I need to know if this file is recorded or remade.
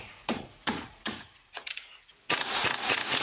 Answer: remade